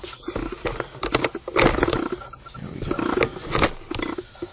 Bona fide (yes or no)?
yes